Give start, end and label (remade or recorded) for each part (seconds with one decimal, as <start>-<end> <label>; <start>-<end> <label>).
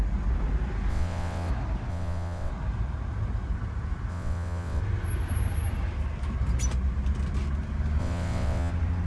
0.0-0.9 recorded; 0.9-1.5 remade; 1.5-1.9 recorded; 1.9-2.5 remade; 2.5-4.1 recorded; 4.1-4.8 remade; 4.8-8.0 recorded; 8.0-8.7 remade; 8.7-9.1 recorded